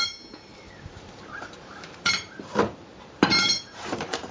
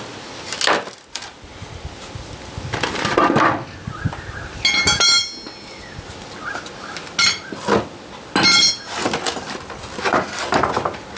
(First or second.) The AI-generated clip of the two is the first